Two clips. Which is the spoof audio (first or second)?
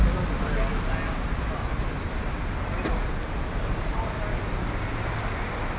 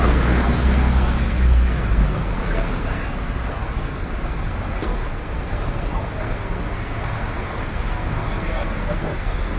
second